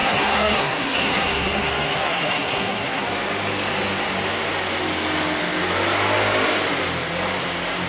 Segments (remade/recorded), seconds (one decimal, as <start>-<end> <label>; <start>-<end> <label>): 0.0-3.0 remade; 3.0-7.9 recorded